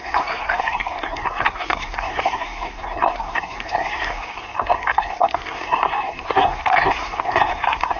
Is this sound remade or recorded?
remade